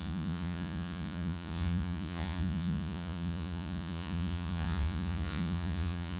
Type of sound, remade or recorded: remade